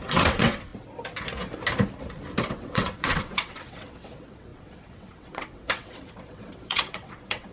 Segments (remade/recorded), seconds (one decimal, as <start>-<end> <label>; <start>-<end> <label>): 0.0-0.7 remade; 0.7-2.5 recorded; 2.5-7.5 remade